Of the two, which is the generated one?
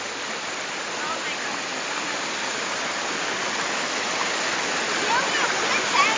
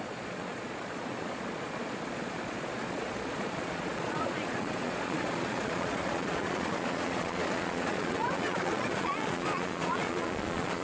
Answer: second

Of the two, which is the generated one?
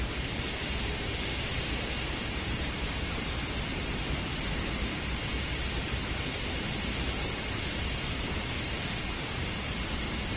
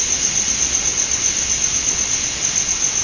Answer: first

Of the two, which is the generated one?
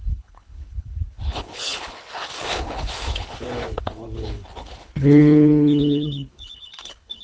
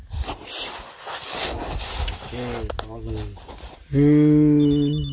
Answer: first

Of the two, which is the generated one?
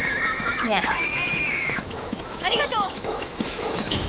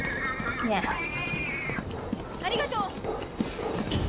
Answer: first